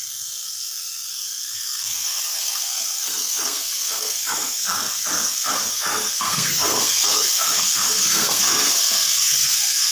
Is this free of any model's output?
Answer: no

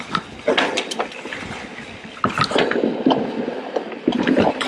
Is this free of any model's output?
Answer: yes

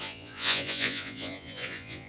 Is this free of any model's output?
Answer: no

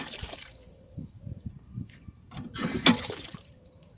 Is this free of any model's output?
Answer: no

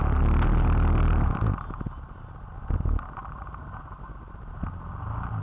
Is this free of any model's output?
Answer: yes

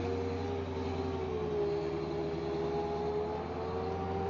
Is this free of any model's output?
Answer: yes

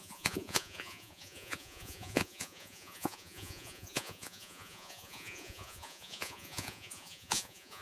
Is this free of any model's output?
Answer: no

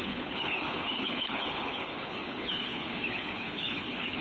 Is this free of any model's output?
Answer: no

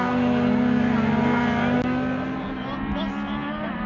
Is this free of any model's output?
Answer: yes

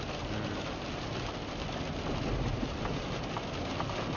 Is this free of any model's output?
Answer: yes